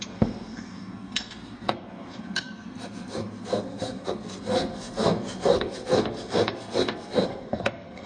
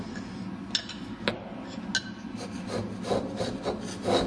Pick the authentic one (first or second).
second